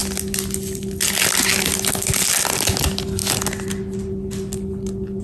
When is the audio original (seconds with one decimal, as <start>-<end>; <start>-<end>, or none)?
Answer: 0.0-5.2